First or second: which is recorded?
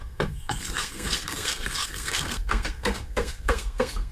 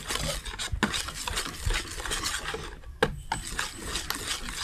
second